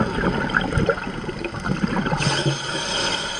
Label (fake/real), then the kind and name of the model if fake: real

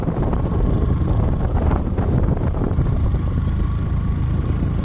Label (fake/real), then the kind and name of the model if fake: fake, vocoder, BigVGAN v2